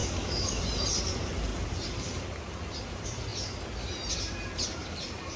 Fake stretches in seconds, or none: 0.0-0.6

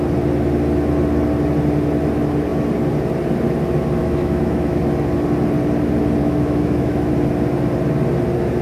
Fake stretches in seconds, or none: 4.0-4.8; 6.2-7.1

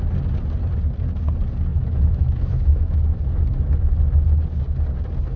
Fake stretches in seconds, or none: 1.7-3.2

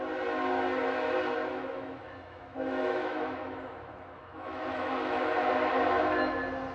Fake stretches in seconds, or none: 1.5-5.5

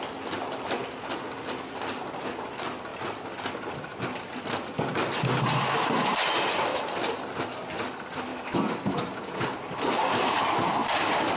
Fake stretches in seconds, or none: 8.3-9.0

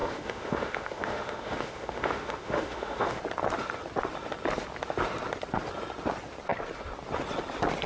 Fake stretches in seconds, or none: 0.0-3.2

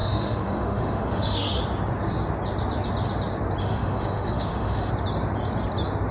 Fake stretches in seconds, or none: 0.0-1.6; 3.6-4.9

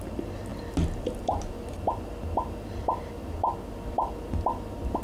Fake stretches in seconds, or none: none